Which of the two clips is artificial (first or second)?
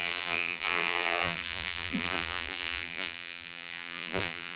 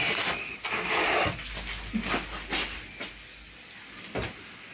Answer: first